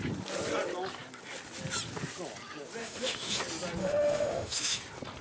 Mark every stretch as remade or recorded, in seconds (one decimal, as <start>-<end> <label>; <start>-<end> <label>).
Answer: 0.0-2.8 recorded; 2.8-3.4 remade; 3.4-3.8 recorded; 3.8-4.8 remade; 4.8-5.2 recorded